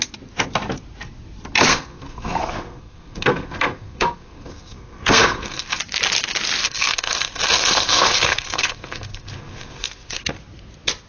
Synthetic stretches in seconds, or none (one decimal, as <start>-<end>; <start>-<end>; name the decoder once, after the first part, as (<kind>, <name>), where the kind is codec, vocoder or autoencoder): 1.7-5.8 (codec, SNAC); 6.6-10.2